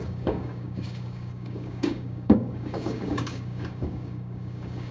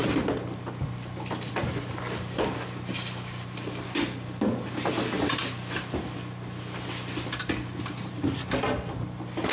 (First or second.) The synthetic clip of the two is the first